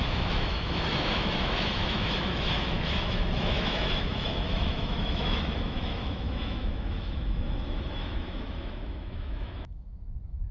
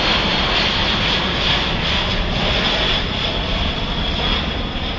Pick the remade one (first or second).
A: first